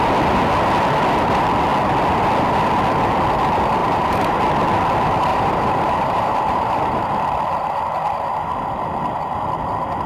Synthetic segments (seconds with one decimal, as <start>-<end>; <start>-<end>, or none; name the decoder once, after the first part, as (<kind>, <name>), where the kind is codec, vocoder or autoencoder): 3.8-4.3 (vocoder, BigVGAN v2); 5.3-7.1